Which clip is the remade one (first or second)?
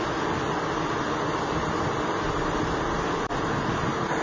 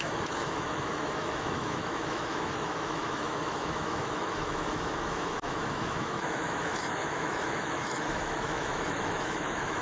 second